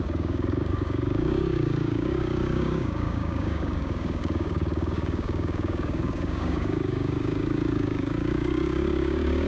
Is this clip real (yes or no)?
no